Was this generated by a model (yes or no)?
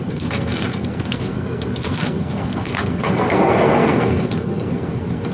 yes